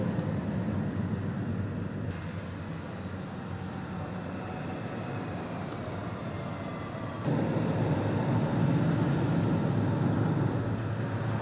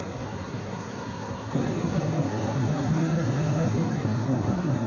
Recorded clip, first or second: first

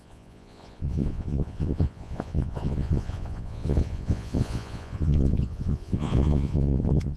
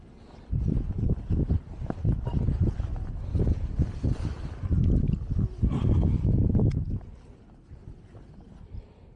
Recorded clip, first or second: second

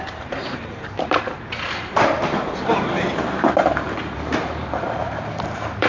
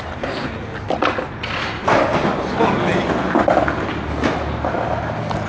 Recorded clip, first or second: second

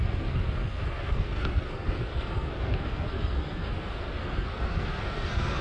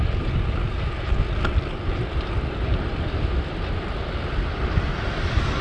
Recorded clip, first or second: second